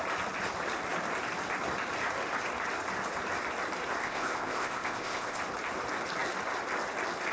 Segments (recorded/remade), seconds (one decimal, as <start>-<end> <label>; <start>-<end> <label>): 0.0-4.0 recorded; 4.0-5.4 remade; 5.4-7.3 recorded